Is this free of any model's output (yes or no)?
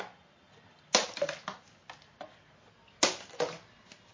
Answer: yes